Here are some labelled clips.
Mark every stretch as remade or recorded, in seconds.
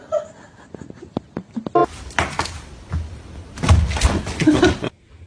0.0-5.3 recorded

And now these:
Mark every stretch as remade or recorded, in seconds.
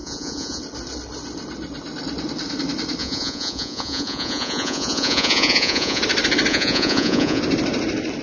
0.0-0.6 remade; 0.6-3.0 recorded; 3.0-6.0 remade; 6.0-6.5 recorded; 6.5-7.4 remade; 7.4-8.2 recorded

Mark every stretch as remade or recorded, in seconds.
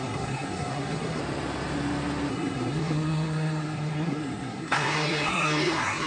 0.0-1.2 remade; 1.2-2.3 recorded; 2.3-6.1 remade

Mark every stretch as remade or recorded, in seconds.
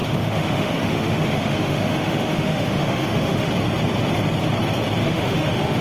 0.0-3.5 remade; 3.5-5.0 recorded; 5.0-5.8 remade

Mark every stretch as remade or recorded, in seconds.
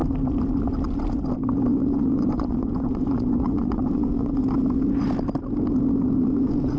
0.0-1.7 recorded; 1.7-4.4 remade; 4.4-6.2 recorded; 6.2-6.8 remade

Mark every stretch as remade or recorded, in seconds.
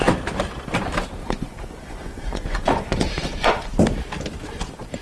0.0-1.2 recorded; 1.2-3.7 remade; 3.7-5.0 recorded